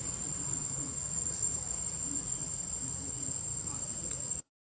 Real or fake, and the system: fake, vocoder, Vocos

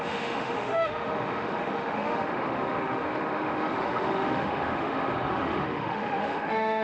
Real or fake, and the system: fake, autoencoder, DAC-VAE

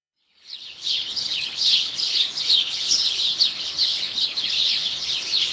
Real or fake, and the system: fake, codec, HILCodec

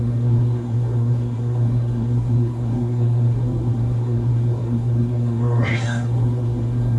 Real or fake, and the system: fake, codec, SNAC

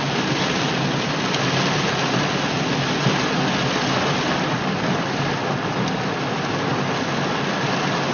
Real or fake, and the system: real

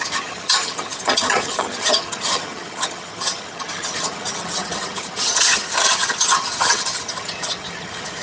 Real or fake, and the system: fake, vocoder, HiFi-GAN